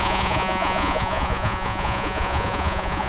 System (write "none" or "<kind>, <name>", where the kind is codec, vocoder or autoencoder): vocoder, Vocos